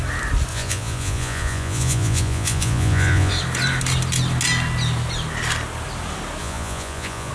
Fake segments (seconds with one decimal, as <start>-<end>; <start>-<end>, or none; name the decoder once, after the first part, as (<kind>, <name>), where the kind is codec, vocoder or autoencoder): 0.5-3.3 (vocoder, Vocos); 6.4-7.3